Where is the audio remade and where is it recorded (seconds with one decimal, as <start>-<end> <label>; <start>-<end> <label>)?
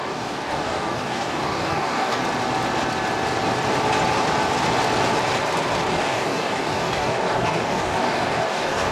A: 0.0-2.2 remade; 2.2-5.9 recorded; 5.9-8.9 remade